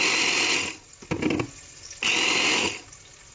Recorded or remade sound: recorded